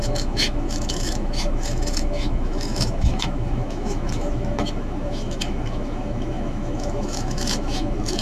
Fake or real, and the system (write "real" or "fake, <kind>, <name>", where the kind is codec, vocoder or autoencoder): fake, autoencoder, DAC-VAE